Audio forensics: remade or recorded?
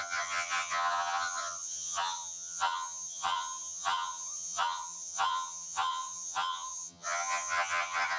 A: remade